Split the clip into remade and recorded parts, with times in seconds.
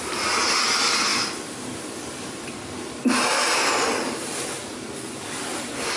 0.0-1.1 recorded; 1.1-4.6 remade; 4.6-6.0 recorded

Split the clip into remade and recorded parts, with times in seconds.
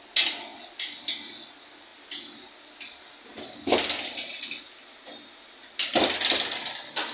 0.0-7.1 recorded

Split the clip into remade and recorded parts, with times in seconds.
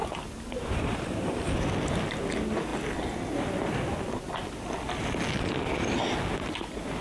0.0-1.4 remade; 1.4-7.0 recorded